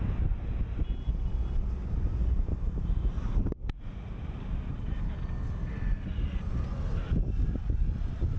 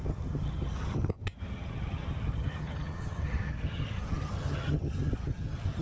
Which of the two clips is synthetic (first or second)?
second